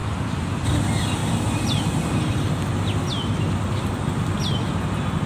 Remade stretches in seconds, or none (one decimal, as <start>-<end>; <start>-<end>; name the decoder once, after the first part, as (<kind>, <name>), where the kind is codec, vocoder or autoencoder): none